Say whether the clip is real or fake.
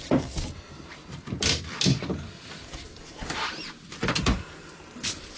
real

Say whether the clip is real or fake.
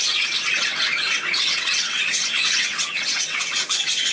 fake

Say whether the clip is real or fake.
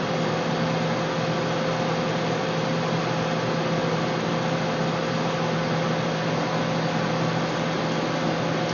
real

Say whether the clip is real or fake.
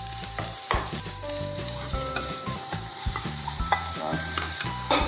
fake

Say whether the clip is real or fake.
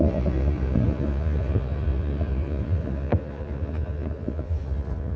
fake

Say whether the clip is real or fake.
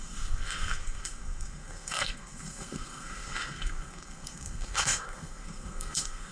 fake